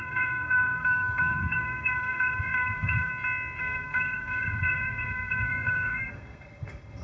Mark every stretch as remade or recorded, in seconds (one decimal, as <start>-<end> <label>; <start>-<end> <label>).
0.0-3.1 remade; 3.1-3.6 recorded; 3.6-7.0 remade